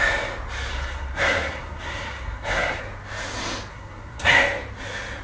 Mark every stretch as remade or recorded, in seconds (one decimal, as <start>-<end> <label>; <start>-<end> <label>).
0.0-0.7 recorded; 0.7-2.8 remade; 2.8-3.7 recorded; 3.7-4.3 remade; 4.3-5.2 recorded